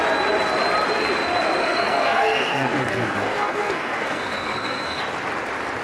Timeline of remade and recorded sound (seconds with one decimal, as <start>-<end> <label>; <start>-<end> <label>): 0.0-1.6 recorded; 1.6-5.0 remade; 5.0-5.8 recorded

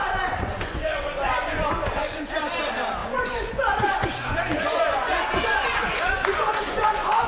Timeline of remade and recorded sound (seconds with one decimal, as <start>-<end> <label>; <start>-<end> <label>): 0.0-2.3 remade; 2.3-3.0 recorded; 3.0-7.3 remade

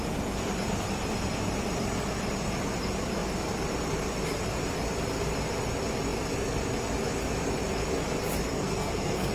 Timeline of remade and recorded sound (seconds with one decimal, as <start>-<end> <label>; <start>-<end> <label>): 0.0-8.5 recorded; 8.5-9.3 remade

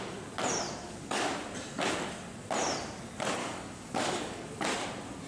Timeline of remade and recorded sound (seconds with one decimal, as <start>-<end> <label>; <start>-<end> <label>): 0.0-0.8 recorded; 0.8-1.3 remade; 1.3-3.4 recorded; 3.4-4.6 remade; 4.6-5.3 recorded

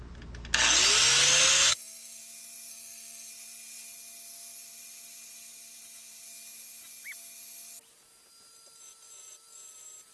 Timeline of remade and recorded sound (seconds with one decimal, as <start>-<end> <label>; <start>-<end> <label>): 0.0-1.5 recorded; 1.5-2.2 remade; 2.2-2.7 recorded; 2.7-3.3 remade; 3.3-10.1 recorded

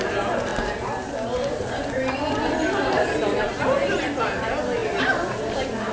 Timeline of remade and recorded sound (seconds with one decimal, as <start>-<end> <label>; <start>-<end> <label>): 0.0-5.9 recorded

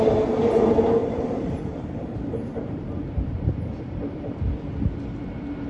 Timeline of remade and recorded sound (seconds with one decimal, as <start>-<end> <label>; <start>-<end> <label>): 0.0-1.0 recorded; 1.0-4.4 remade; 4.4-5.7 recorded